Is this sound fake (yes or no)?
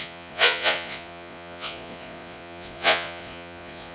yes